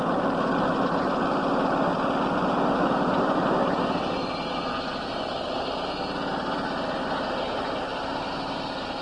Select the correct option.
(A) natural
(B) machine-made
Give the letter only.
A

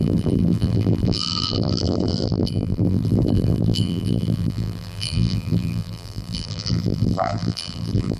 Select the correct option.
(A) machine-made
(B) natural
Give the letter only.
A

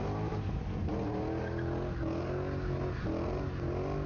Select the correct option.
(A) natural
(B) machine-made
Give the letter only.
A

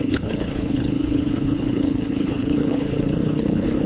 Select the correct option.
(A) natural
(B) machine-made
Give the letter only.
B